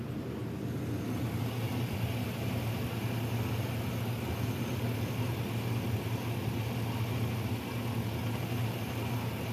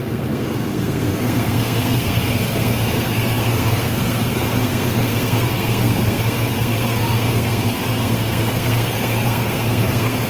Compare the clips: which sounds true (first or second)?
first